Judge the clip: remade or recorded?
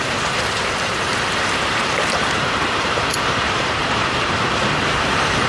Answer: remade